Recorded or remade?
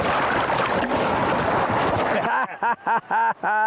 recorded